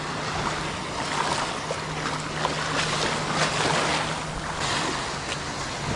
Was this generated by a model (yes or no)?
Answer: no